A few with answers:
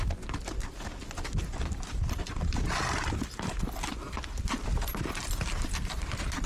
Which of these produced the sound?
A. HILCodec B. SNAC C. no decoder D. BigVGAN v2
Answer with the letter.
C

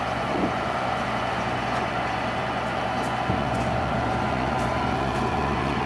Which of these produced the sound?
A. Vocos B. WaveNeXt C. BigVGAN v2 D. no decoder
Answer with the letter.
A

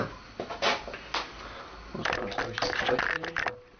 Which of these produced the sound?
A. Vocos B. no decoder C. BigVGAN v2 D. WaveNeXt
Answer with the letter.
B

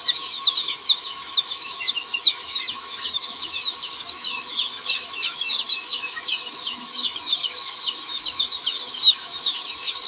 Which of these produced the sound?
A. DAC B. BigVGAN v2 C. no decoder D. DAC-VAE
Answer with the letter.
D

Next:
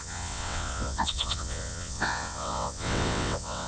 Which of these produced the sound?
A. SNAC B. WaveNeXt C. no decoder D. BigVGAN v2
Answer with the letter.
B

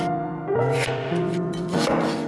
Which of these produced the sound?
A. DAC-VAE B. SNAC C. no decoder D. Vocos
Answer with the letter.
D